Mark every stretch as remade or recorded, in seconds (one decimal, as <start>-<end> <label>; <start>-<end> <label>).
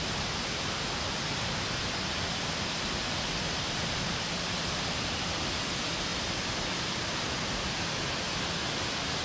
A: 0.0-6.1 recorded; 6.1-7.4 remade; 7.4-9.2 recorded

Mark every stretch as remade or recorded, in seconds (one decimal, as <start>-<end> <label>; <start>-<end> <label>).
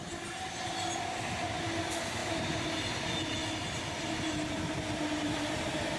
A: 0.0-2.2 recorded; 2.2-2.8 remade; 2.8-3.4 recorded; 3.4-5.6 remade; 5.6-6.0 recorded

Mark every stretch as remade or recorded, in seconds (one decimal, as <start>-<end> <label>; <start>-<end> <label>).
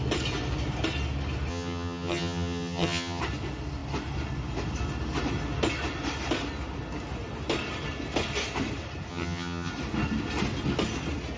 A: 0.0-1.5 recorded; 1.5-3.2 remade; 3.2-9.1 recorded; 9.1-9.7 remade; 9.7-11.4 recorded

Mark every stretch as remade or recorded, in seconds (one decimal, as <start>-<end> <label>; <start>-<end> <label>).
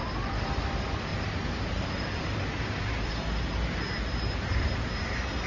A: 0.0-0.6 remade; 0.6-1.1 recorded; 1.1-3.1 remade; 3.1-5.5 recorded